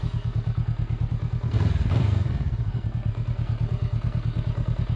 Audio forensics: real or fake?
fake